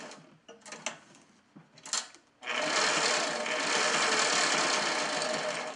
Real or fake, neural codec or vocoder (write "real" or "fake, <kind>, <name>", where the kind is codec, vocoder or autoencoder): real